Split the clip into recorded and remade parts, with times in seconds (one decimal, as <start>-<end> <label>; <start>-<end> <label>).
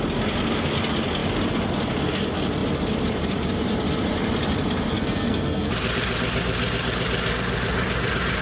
0.0-4.9 recorded; 4.9-5.7 remade; 5.7-8.4 recorded